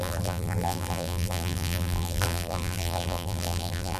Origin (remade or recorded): remade